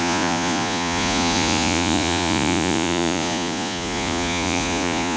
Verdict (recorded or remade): remade